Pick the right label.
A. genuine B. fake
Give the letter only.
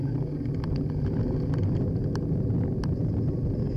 A